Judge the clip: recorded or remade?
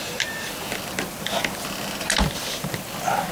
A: recorded